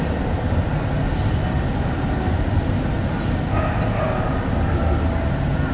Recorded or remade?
recorded